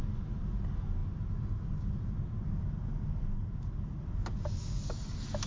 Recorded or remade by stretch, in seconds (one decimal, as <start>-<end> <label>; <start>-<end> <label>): 0.0-5.5 recorded